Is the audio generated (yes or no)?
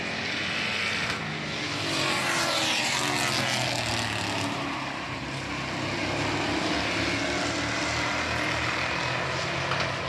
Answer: no